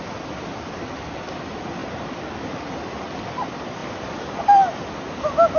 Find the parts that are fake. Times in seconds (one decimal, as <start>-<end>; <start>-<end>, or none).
none